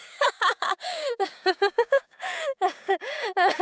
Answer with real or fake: fake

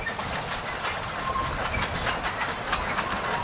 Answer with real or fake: real